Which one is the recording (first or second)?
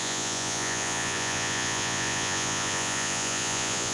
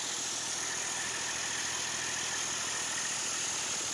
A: second